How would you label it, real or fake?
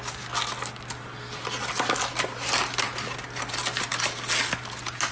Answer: real